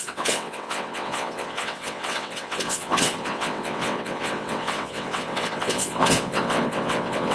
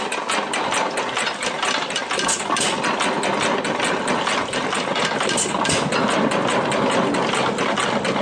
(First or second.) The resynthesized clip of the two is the first